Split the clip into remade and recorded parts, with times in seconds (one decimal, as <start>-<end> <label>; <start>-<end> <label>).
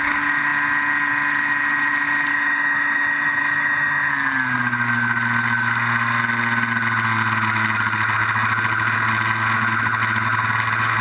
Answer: 0.0-2.3 recorded; 2.3-4.1 remade; 4.1-11.0 recorded